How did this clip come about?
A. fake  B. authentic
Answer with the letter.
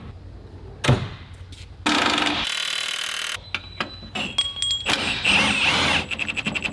B